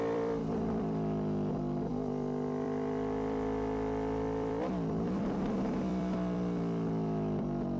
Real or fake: fake